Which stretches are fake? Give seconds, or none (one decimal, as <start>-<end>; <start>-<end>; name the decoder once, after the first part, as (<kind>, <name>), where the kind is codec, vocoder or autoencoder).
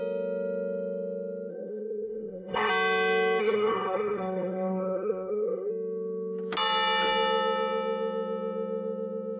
1.5-2.7 (codec, SNAC); 3.4-5.7